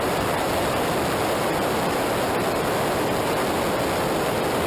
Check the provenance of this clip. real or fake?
real